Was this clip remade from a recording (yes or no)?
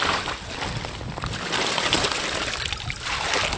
no